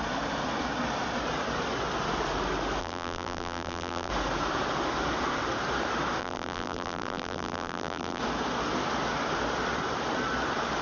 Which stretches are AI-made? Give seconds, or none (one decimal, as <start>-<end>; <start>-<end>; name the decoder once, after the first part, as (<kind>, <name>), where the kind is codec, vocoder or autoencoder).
2.8-4.1 (vocoder, BigVGAN v2); 6.2-8.2